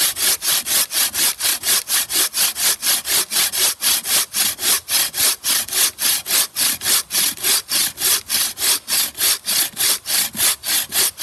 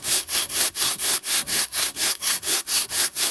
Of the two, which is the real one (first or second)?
first